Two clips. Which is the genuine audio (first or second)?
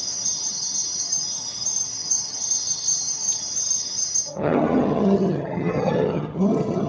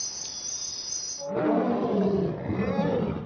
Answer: second